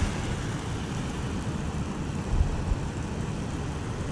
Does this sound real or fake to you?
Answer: real